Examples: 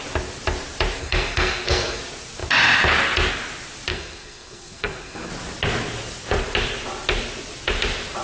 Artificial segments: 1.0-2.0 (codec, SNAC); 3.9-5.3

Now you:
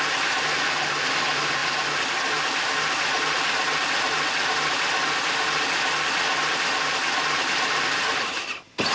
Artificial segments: none